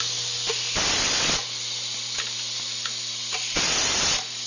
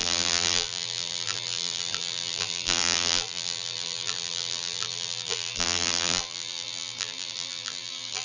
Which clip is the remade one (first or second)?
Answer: second